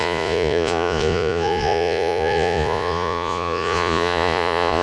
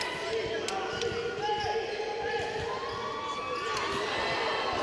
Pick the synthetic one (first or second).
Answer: first